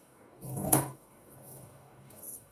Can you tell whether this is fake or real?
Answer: fake